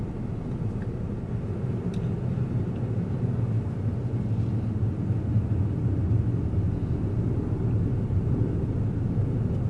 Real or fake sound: real